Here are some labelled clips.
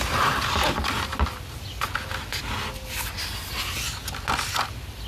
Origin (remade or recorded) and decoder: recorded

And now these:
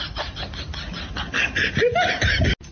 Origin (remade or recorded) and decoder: recorded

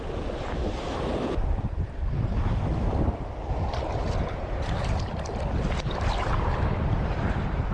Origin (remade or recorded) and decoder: remade, vocoder, BigVGAN v2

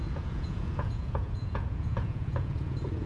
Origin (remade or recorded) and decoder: remade, vocoder, Vocos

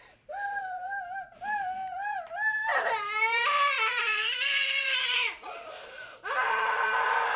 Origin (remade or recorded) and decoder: remade, vocoder, BigVGAN v2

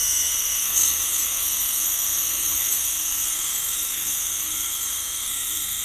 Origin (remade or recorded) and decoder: remade, codec, SNAC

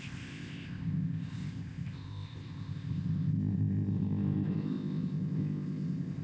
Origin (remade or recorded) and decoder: remade, codec, ZipCodec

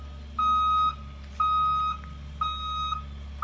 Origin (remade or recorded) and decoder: recorded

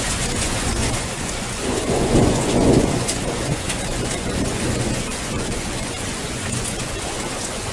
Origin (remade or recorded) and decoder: remade, vocoder, Vocos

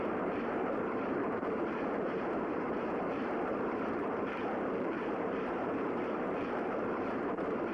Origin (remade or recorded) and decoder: remade, vocoder, BigVGAN v2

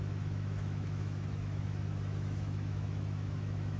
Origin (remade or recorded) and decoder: remade, autoencoder, DAC-VAE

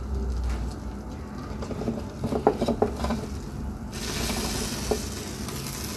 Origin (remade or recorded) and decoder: recorded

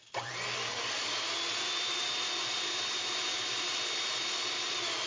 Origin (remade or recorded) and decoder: recorded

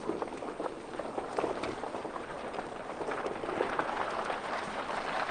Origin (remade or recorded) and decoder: recorded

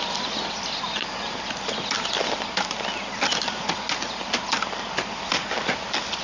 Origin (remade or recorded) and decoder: recorded